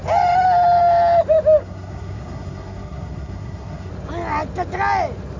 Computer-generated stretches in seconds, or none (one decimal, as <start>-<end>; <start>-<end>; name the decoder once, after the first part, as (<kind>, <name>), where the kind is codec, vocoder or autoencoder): 1.6-3.9 (codec, SNAC)